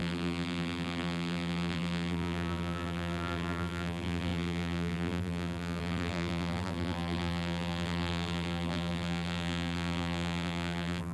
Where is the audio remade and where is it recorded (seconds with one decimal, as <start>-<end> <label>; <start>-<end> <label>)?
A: 0.0-11.1 remade